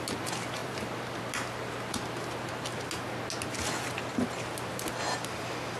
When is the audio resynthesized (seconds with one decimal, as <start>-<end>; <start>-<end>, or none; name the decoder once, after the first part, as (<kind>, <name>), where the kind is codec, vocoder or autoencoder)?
0.6-1.2 (vocoder, BigVGAN v2)